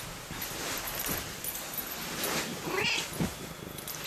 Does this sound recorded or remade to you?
recorded